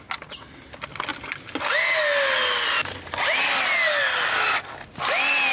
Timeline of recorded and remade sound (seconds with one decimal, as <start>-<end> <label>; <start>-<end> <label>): 0.0-5.5 recorded